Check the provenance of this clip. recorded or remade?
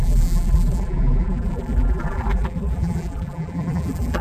remade